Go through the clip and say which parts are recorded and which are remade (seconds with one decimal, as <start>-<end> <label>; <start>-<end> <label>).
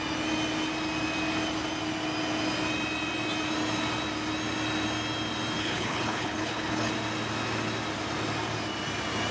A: 0.0-5.6 recorded; 5.6-6.9 remade; 6.9-9.3 recorded